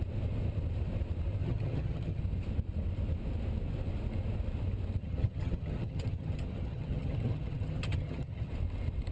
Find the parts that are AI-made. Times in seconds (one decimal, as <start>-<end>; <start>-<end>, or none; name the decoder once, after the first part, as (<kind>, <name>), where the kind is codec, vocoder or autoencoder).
1.4-2.2 (vocoder, HiFi-GAN); 5.0-8.5